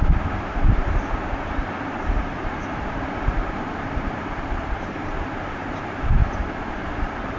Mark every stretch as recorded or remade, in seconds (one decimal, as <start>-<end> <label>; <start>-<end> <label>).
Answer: 0.0-6.2 remade; 6.2-6.7 recorded; 6.7-7.4 remade